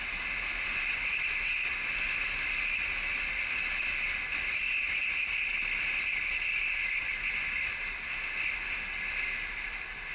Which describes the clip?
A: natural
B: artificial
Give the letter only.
A